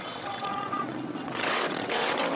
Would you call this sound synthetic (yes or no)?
yes